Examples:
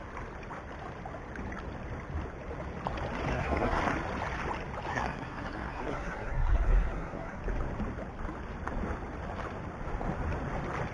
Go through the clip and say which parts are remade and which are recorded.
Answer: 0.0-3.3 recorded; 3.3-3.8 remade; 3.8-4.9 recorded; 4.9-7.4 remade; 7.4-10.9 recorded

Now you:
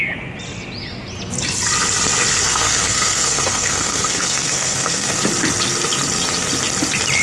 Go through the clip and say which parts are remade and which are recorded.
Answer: 0.0-2.4 recorded; 2.4-5.2 remade; 5.2-7.2 recorded

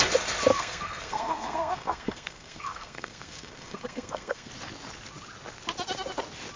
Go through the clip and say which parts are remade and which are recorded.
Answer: 0.0-0.5 recorded; 0.5-4.5 remade; 4.5-6.6 recorded

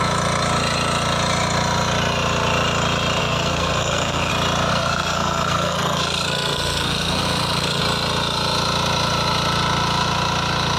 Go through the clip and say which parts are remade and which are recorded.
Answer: 0.0-3.2 recorded; 3.2-4.3 remade; 4.3-4.7 recorded; 4.7-7.8 remade; 7.8-10.8 recorded

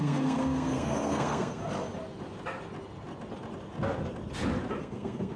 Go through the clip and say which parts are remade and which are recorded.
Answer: 0.0-1.6 remade; 1.6-4.8 recorded; 4.8-5.4 remade

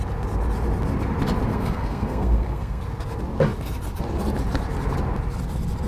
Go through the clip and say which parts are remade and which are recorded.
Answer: 0.0-1.5 recorded; 1.5-2.8 remade; 2.8-5.9 recorded